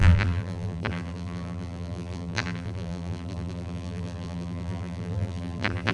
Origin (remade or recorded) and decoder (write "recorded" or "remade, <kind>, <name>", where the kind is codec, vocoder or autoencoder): remade, vocoder, BigVGAN v2